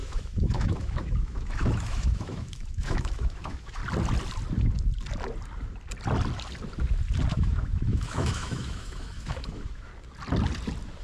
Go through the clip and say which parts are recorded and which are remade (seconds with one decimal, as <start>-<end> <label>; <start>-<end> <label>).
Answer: 0.0-3.8 remade; 3.8-7.3 recorded; 7.3-9.9 remade; 9.9-11.0 recorded